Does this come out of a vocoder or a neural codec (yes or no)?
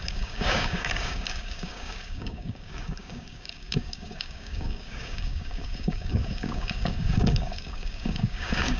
yes